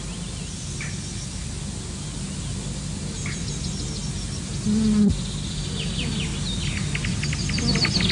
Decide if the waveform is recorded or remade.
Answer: recorded